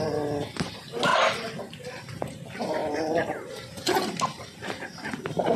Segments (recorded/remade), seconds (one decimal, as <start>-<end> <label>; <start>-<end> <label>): 0.0-5.6 recorded